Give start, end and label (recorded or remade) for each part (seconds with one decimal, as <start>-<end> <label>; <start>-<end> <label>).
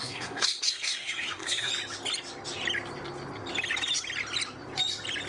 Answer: 0.0-1.7 remade; 1.7-5.3 recorded